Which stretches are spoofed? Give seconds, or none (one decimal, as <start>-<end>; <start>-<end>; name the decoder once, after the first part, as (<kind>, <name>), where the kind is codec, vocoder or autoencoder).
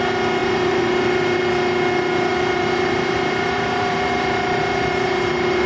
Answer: 0.4-1.4 (vocoder, BigVGAN v2); 2.3-5.7